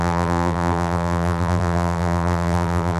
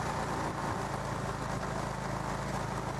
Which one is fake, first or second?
first